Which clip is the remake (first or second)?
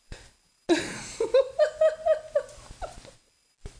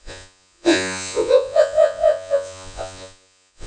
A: second